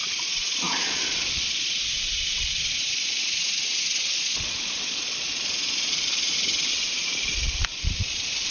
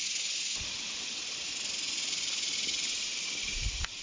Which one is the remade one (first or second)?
first